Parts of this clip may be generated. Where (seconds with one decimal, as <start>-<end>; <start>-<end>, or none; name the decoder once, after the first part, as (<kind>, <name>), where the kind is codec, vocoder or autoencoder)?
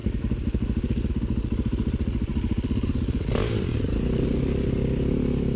none